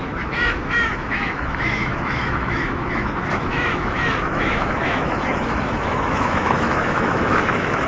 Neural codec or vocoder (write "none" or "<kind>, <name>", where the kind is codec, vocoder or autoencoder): autoencoder, DAC-VAE